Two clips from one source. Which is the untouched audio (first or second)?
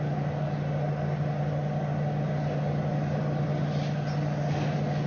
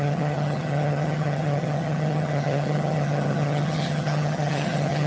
first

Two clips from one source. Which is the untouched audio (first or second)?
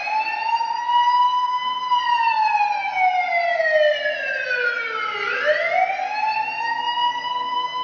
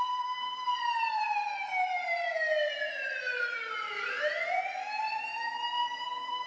first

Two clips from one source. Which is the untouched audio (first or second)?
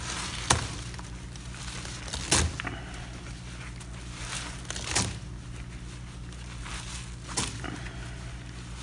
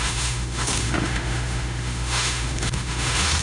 first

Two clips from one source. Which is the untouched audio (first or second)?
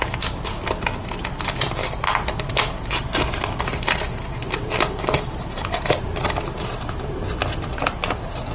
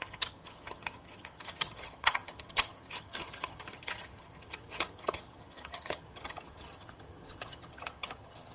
first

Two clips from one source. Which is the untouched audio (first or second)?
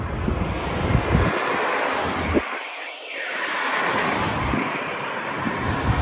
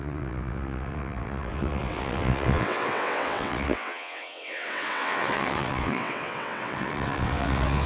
first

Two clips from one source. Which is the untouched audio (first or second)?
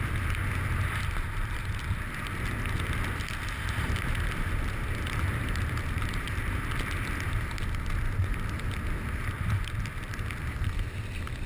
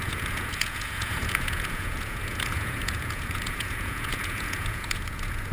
first